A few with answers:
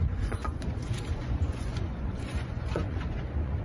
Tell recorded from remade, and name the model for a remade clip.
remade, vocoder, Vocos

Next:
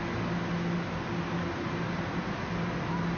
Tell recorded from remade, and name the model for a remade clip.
recorded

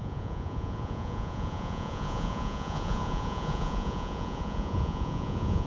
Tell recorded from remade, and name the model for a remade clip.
remade, vocoder, Vocos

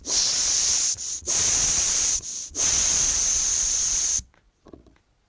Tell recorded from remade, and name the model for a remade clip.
remade, vocoder, Vocos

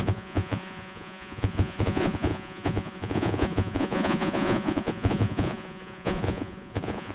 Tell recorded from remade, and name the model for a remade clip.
remade, vocoder, Vocos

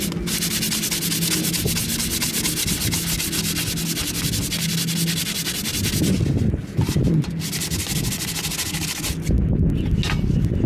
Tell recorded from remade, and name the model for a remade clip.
recorded